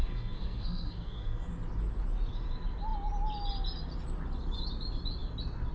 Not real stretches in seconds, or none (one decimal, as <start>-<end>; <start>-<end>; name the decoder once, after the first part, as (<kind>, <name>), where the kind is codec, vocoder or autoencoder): 0.0-1.5 (codec, SNAC)